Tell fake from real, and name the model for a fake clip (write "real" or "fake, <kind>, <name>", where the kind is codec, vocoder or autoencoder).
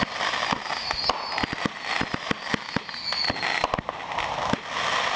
real